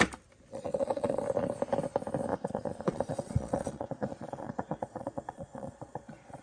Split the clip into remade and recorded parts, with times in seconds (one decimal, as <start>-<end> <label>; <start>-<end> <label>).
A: 0.0-0.5 recorded; 0.5-1.2 remade; 1.2-2.3 recorded; 2.3-6.4 remade